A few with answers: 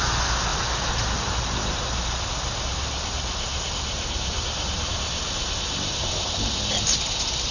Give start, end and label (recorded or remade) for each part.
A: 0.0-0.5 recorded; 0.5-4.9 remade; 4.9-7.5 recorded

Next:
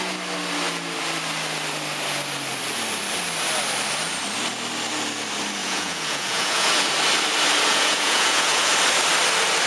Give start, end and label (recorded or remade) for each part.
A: 0.0-5.6 recorded; 5.6-6.9 remade; 6.9-7.7 recorded; 7.7-8.7 remade; 8.7-9.7 recorded

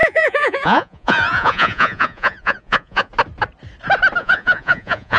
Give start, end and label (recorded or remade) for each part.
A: 0.0-3.1 remade; 3.1-4.2 recorded; 4.2-5.2 remade

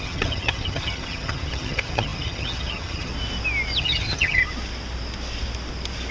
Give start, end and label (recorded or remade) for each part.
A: 0.0-3.1 remade; 3.1-3.8 recorded; 3.8-4.4 remade; 4.4-6.1 recorded

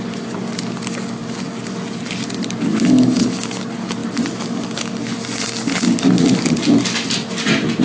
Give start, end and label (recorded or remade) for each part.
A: 0.0-7.8 recorded

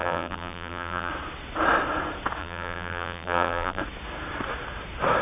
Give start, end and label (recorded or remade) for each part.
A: 0.0-1.1 remade; 1.1-2.4 recorded; 2.4-3.8 remade; 3.8-5.2 recorded

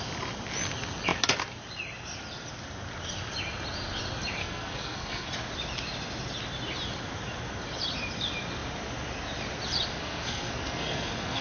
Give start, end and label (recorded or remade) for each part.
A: 0.0-4.4 recorded; 4.4-5.3 remade; 5.3-10.0 recorded; 10.0-11.4 remade